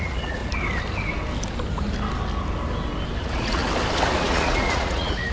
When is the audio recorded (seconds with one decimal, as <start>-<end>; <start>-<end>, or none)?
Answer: 0.4-3.2; 3.6-4.2